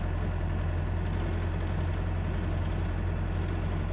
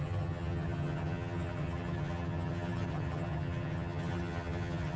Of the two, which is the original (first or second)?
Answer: first